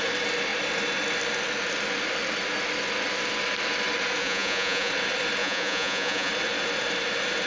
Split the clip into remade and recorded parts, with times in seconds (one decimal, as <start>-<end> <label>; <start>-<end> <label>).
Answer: 0.0-4.2 recorded; 4.2-4.9 remade; 4.9-5.4 recorded; 5.4-6.3 remade; 6.3-7.5 recorded